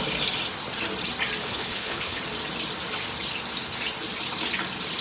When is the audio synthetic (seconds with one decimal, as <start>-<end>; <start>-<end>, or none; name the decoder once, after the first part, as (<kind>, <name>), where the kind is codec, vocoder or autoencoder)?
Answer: 1.4-2.2 (codec, HILCodec)